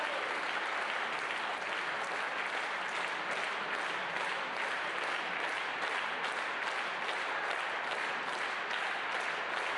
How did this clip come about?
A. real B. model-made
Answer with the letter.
A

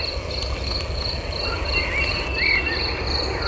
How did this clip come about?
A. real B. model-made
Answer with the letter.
A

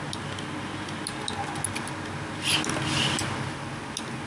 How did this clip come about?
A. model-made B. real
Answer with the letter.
B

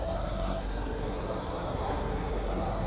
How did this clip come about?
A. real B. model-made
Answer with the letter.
B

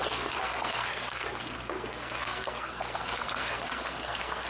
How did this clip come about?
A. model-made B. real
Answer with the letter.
A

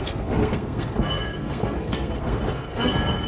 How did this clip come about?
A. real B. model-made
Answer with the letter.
B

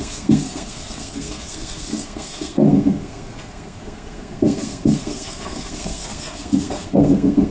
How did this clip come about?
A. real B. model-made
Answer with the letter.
B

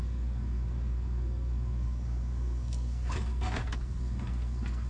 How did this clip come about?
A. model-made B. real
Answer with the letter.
A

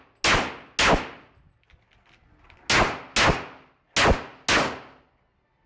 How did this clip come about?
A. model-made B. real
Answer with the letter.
B